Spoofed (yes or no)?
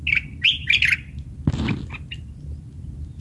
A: no